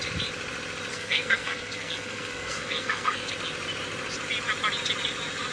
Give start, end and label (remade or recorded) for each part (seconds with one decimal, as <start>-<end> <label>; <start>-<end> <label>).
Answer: 0.0-0.9 recorded; 0.9-3.3 remade; 3.3-5.5 recorded